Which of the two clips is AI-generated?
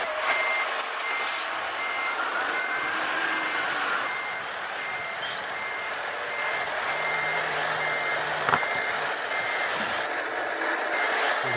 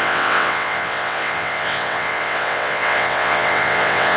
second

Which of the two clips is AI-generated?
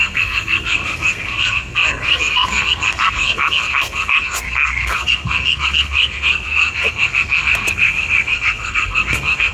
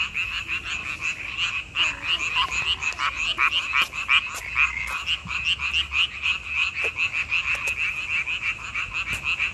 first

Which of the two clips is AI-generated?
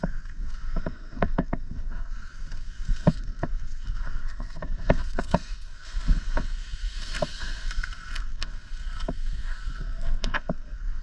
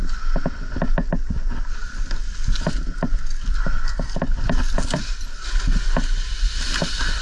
first